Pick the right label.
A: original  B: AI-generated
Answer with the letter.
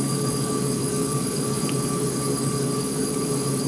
B